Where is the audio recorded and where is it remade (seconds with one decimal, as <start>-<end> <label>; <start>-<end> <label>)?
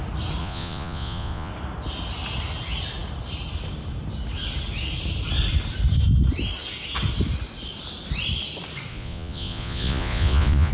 0.0-0.4 recorded; 0.4-1.5 remade; 1.5-8.9 recorded; 8.9-10.7 remade